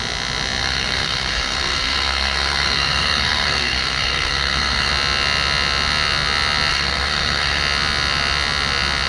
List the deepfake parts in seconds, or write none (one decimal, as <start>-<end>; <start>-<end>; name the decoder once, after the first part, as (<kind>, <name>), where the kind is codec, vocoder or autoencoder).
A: 0.6-4.9 (codec, SNAC); 6.7-7.6